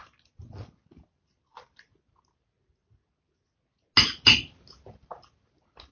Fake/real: real